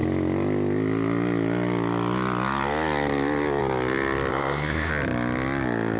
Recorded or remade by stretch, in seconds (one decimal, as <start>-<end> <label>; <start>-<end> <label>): 0.0-4.3 recorded; 4.3-4.9 remade; 4.9-6.0 recorded